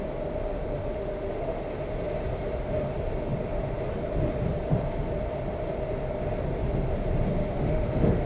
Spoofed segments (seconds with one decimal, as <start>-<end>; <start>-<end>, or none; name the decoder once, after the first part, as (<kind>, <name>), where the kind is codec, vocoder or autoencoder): 0.8-1.6 (autoencoder, DAC-VAE); 7.4-8.3